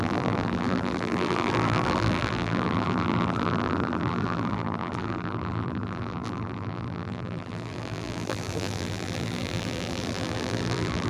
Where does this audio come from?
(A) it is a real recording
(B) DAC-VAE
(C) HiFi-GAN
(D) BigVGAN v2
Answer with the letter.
D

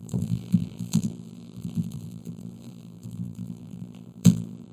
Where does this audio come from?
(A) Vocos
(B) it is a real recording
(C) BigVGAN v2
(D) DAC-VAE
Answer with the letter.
C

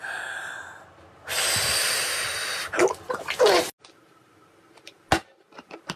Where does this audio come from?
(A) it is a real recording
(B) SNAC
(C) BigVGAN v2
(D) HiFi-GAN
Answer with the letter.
A